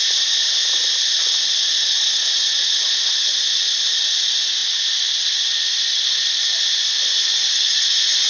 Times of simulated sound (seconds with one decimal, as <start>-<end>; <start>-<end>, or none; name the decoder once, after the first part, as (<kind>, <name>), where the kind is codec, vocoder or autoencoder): none